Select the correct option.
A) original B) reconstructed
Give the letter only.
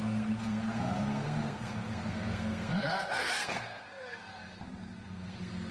B